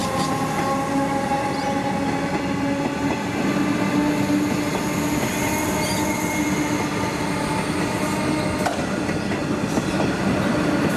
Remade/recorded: recorded